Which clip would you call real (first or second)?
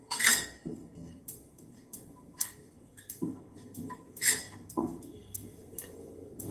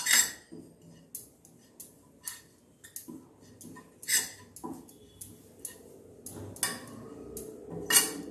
second